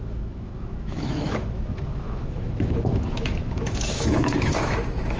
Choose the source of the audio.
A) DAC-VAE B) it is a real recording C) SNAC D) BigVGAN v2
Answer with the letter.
A